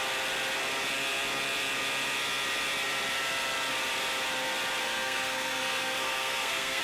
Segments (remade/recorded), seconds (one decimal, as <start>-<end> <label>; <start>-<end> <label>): 0.0-4.8 recorded; 4.8-6.8 remade